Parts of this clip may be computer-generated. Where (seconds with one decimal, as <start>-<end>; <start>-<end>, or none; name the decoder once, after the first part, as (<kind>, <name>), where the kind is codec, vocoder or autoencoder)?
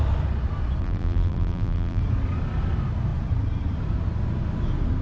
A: 0.8-2.0 (vocoder, BigVGAN v2)